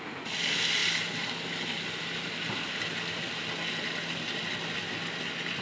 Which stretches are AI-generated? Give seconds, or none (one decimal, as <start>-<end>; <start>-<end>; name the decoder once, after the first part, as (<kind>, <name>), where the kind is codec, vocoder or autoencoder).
none